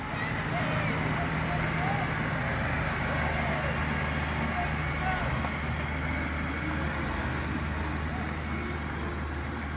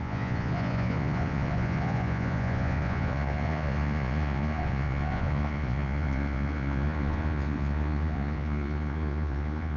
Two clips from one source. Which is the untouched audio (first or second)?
first